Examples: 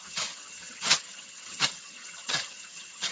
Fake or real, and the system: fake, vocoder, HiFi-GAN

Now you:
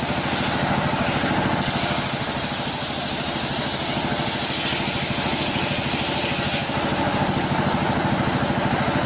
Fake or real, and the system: real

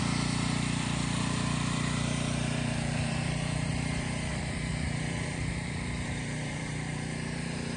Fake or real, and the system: fake, vocoder, BigVGAN v2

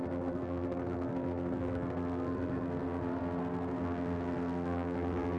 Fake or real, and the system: fake, codec, SNAC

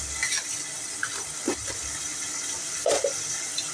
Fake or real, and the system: real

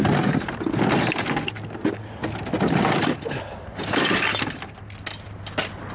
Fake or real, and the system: real